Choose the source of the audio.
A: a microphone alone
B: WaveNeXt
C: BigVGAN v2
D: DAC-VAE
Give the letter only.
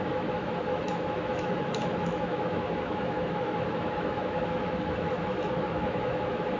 D